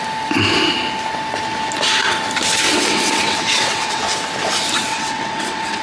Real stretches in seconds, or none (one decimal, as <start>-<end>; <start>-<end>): 0.0-2.7; 4.0-4.9